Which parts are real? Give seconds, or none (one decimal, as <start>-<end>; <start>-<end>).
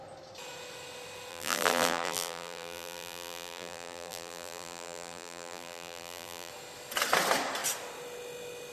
0.0-1.3; 6.5-8.7